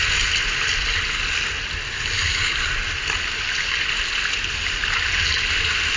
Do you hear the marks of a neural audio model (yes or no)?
no